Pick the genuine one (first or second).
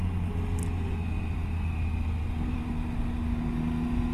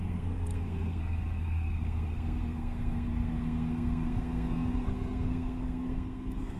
first